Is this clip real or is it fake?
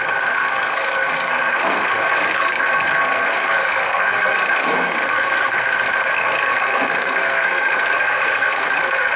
fake